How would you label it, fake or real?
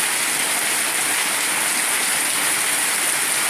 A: real